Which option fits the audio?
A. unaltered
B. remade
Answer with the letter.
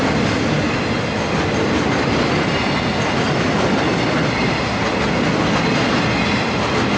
A